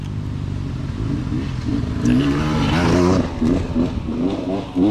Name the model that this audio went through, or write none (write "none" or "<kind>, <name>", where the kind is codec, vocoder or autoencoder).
none